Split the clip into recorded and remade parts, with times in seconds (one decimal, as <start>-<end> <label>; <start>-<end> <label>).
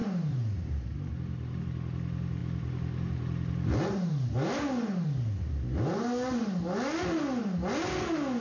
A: 0.0-8.4 recorded